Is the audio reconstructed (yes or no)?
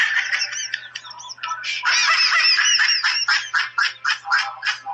no